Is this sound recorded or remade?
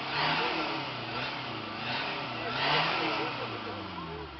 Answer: recorded